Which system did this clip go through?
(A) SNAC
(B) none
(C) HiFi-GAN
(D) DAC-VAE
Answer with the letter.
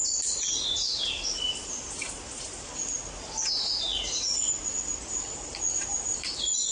B